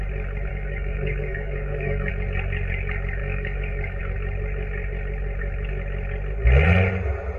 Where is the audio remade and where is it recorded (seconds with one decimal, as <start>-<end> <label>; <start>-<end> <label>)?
0.0-0.5 recorded; 0.5-2.1 remade; 2.1-3.2 recorded; 3.2-4.0 remade; 4.0-7.4 recorded